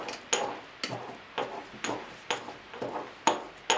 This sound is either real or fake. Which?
real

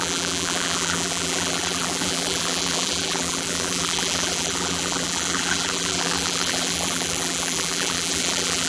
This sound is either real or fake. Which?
fake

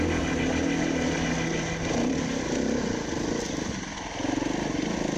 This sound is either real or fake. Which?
real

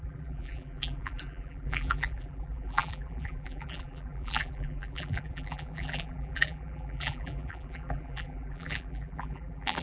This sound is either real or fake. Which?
fake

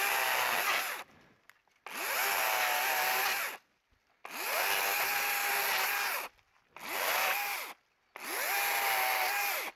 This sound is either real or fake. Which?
real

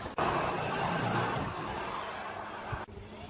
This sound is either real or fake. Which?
fake